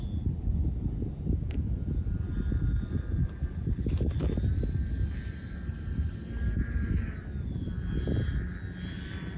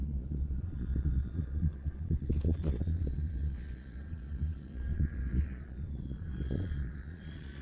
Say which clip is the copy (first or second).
second